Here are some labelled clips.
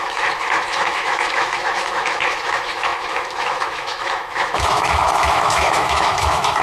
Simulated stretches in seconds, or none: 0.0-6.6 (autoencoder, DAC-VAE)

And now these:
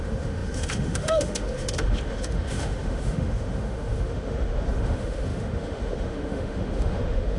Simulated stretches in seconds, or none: 0.0-7.4 (autoencoder, DAC-VAE)

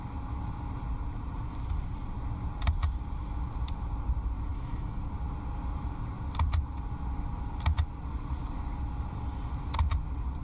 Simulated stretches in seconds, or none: 4.5-5.0 (autoencoder, DAC-VAE)